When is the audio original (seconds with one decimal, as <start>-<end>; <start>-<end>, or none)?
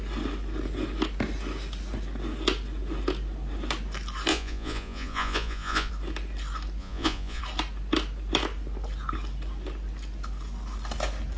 0.0-4.3; 5.9-6.8; 7.4-11.4